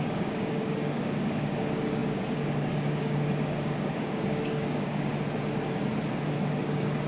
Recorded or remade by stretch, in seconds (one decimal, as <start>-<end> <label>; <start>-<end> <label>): 0.0-5.1 remade; 5.1-6.4 recorded; 6.4-7.1 remade